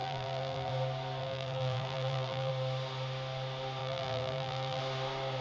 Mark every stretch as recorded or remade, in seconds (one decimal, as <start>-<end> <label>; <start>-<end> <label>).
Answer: 0.0-0.7 remade; 0.7-1.2 recorded; 1.2-2.5 remade; 2.5-3.8 recorded; 3.8-4.8 remade; 4.8-5.4 recorded